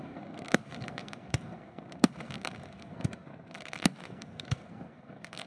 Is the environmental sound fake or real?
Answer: fake